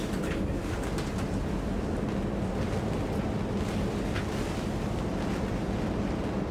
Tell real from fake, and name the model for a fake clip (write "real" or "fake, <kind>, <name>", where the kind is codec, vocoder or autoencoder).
real